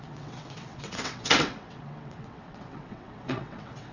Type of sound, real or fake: fake